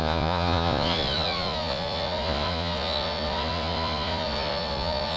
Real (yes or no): no